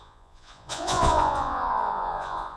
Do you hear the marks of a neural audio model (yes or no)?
yes